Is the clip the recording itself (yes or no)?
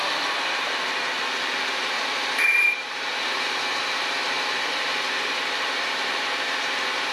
no